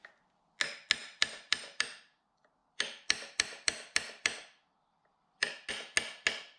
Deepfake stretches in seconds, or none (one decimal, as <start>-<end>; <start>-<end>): 1.0-2.0; 2.6-5.7